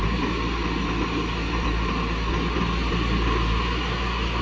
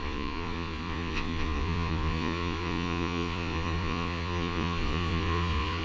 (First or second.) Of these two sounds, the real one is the first